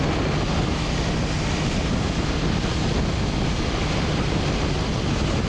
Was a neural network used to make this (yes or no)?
no